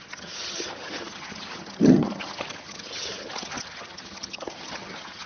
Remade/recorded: remade